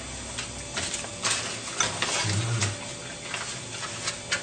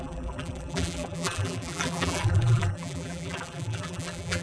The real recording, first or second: first